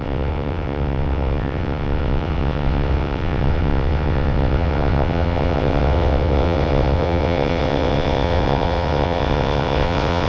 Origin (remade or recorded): remade